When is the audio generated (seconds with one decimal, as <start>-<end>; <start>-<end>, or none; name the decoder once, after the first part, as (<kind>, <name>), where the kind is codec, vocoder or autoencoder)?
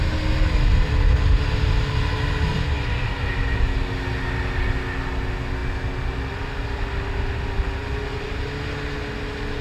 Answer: none